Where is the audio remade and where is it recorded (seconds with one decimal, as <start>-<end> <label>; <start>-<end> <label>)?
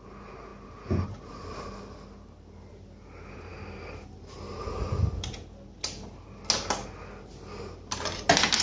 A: 0.0-3.5 recorded; 3.5-5.3 remade; 5.3-8.6 recorded